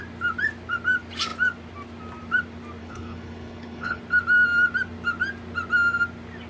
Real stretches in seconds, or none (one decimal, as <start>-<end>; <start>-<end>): 0.0-2.8; 4.0-6.5